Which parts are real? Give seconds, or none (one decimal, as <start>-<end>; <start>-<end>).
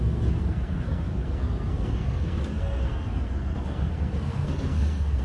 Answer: none